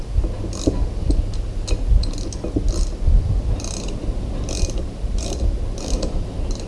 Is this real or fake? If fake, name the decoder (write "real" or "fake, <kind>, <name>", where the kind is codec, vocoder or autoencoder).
real